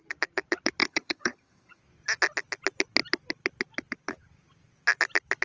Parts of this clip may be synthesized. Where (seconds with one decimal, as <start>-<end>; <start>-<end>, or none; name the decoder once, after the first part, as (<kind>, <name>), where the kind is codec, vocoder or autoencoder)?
0.8-1.8 (vocoder, HiFi-GAN)